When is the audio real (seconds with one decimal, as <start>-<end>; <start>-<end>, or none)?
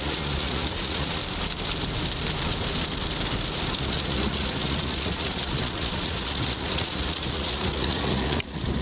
1.2-3.8